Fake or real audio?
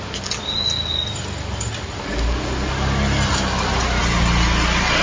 real